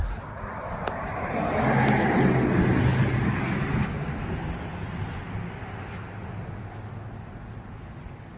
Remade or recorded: recorded